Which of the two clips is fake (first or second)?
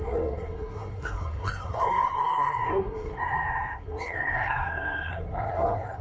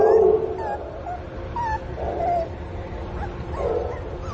first